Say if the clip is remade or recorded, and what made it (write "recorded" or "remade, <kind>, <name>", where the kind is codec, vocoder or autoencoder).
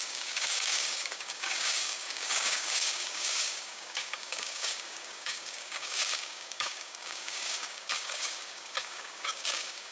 remade, codec, DAC